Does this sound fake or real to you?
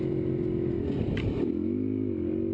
real